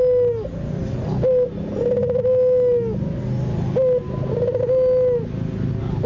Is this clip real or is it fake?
real